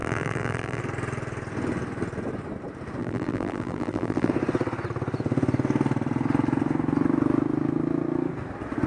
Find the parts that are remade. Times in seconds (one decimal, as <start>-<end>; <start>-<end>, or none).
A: 0.0-0.8; 3.0-4.3